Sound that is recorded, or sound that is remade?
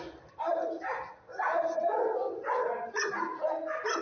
recorded